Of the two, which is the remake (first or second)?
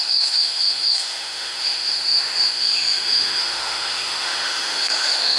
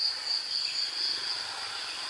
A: first